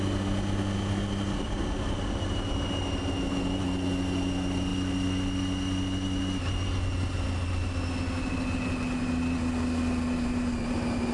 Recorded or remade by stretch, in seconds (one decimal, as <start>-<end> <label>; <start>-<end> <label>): 0.0-11.1 recorded

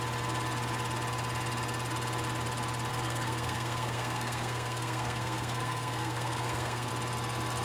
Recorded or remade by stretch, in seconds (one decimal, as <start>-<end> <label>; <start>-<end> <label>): 0.0-2.9 recorded; 2.9-6.9 remade; 6.9-7.6 recorded